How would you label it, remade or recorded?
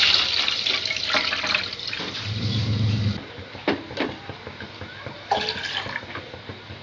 recorded